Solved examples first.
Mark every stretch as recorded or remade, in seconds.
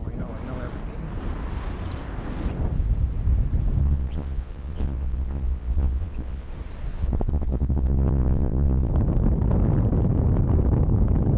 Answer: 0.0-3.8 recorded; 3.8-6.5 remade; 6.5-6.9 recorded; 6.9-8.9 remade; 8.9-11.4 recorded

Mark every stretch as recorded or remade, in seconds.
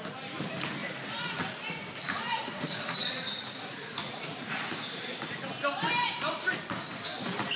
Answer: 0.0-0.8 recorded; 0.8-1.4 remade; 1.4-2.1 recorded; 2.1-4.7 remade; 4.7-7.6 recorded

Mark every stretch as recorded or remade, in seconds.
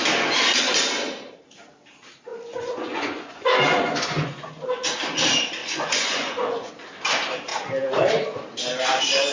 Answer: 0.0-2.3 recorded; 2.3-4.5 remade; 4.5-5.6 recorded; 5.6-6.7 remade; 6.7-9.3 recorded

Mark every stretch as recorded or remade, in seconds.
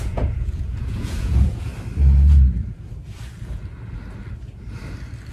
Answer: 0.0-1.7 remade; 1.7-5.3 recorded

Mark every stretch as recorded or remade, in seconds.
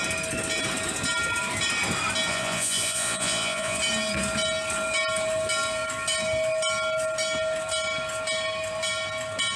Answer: 0.0-2.3 recorded; 2.3-3.8 remade; 3.8-9.6 recorded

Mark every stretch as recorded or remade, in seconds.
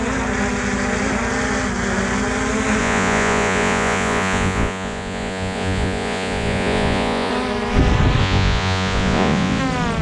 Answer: 0.0-2.8 recorded; 2.8-7.3 remade; 7.3-8.2 recorded; 8.2-9.6 remade; 9.6-10.0 recorded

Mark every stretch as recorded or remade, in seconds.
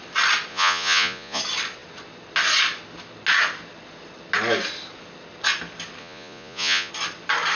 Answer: 0.0-0.5 recorded; 0.5-1.4 remade; 1.4-6.0 recorded; 6.0-6.9 remade; 6.9-7.6 recorded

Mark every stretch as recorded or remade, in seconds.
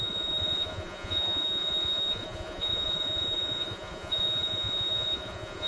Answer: 0.0-5.7 remade